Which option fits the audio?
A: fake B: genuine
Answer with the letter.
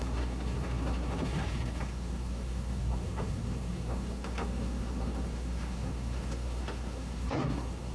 A